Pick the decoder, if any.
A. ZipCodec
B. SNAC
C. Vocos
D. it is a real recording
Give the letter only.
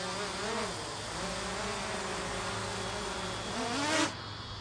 D